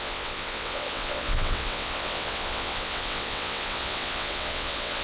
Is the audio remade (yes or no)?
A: yes